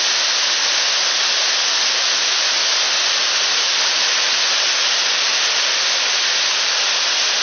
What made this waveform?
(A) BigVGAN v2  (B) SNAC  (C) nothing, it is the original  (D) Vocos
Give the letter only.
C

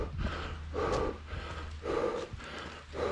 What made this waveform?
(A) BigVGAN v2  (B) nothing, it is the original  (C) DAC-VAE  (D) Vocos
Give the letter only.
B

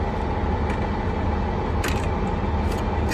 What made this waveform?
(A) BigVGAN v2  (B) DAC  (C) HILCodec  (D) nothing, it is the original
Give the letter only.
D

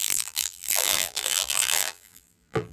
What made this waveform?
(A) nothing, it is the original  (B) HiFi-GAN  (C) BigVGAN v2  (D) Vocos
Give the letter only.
C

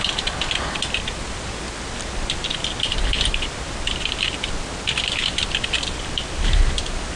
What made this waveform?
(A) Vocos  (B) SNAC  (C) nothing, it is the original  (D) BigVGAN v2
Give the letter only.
D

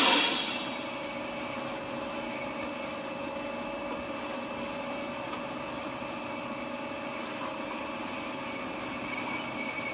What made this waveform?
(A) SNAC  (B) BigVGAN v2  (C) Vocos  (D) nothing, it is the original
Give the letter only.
D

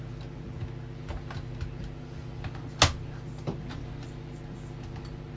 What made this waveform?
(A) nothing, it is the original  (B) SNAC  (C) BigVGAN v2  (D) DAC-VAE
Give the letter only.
A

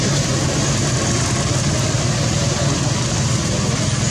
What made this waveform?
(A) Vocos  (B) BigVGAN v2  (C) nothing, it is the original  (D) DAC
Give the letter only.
C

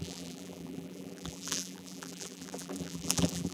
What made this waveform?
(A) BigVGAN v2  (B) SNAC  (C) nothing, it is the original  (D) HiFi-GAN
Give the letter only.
A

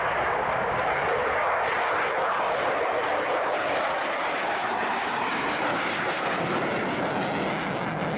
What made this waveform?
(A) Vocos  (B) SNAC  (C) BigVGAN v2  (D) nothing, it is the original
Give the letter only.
D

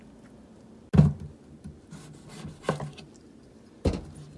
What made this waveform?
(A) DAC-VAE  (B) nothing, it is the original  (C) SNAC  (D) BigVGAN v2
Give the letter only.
B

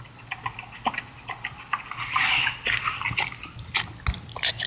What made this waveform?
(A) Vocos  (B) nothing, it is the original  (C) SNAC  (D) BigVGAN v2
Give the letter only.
B